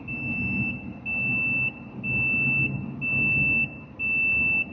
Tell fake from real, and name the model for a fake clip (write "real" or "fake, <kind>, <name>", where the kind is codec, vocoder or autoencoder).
real